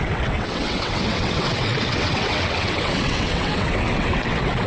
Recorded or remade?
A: remade